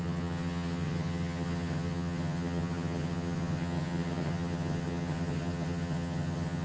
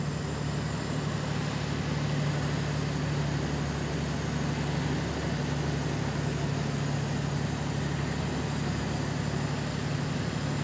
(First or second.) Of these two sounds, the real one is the second